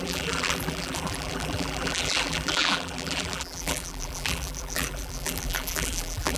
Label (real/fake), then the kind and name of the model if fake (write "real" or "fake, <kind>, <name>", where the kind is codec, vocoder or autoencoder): fake, vocoder, BigVGAN v2